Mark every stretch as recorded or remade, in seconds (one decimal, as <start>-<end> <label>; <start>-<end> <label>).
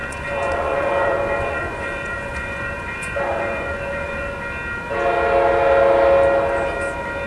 0.0-4.4 remade; 4.4-7.3 recorded